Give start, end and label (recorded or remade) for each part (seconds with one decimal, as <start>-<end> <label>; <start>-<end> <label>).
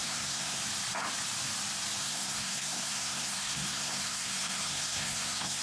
0.0-0.6 remade; 0.6-2.0 recorded; 2.0-5.6 remade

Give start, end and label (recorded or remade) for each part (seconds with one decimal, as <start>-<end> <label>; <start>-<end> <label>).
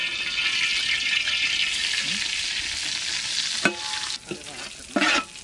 0.0-5.4 recorded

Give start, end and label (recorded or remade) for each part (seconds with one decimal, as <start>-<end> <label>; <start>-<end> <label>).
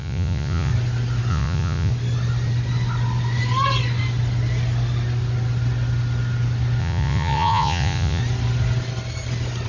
0.0-0.7 remade; 0.7-1.3 recorded; 1.3-1.9 remade; 1.9-6.8 recorded; 6.8-8.2 remade; 8.2-9.7 recorded